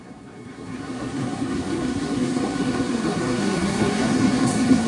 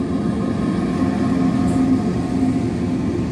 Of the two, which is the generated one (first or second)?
first